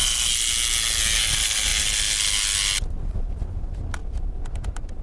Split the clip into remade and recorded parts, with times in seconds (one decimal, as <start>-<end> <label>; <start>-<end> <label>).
0.0-5.0 recorded

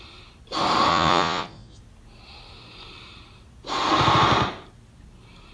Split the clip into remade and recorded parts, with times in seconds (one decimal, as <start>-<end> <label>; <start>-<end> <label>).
0.0-0.9 recorded; 0.9-1.8 remade; 1.8-5.5 recorded

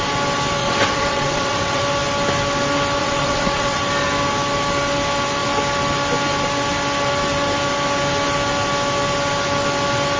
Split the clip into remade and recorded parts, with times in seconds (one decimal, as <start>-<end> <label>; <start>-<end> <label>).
0.0-0.6 recorded; 0.6-1.8 remade; 1.8-3.0 recorded; 3.0-3.8 remade; 3.8-10.2 recorded

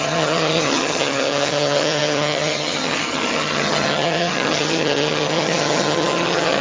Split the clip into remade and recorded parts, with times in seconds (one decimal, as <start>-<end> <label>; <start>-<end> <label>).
0.0-6.6 remade